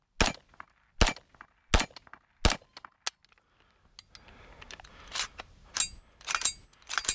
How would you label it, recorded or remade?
recorded